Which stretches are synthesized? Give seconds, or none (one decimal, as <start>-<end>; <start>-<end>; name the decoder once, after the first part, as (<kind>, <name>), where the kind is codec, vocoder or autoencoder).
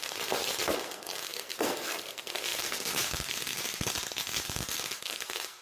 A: 0.0-5.6 (codec, SNAC)